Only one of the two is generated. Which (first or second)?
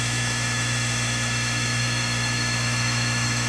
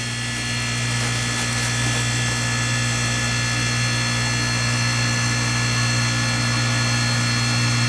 first